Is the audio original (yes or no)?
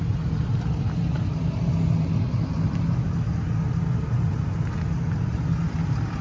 yes